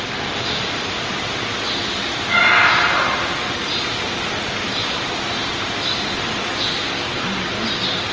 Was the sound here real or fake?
real